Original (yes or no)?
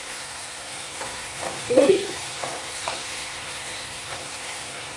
no